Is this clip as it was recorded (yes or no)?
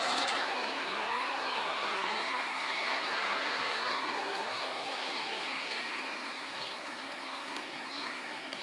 no